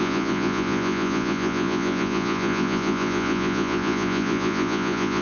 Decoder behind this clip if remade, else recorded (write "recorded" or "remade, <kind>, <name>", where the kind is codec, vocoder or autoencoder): remade, vocoder, Vocos